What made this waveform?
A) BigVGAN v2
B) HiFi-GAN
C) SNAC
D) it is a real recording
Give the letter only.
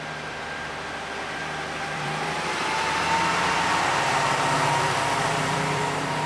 A